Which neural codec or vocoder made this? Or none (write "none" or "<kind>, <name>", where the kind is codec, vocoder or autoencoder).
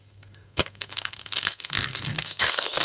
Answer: codec, SNAC